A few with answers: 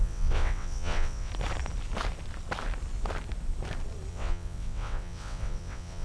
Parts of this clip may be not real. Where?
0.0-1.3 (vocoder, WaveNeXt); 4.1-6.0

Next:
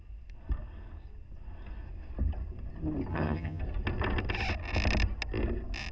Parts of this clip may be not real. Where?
3.1-3.6 (vocoder, HiFi-GAN)

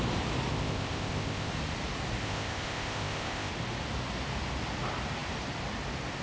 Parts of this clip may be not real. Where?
0.5-1.5 (codec, ZipCodec); 2.2-3.5

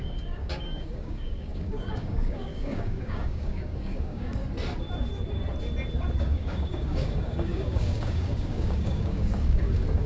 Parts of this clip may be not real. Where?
0.0-4.4 (codec, DAC); 6.2-10.1

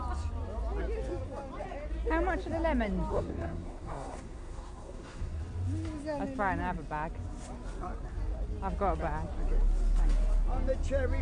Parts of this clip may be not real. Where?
3.1-5.4 (codec, SNAC)

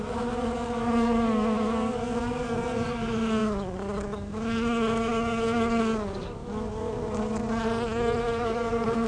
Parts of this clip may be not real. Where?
0.0-7.3 (codec, DAC); 8.2-9.1

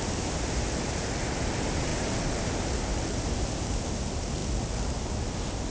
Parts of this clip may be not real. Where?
none